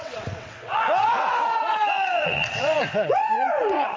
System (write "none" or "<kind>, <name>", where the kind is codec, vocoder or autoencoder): vocoder, WaveNeXt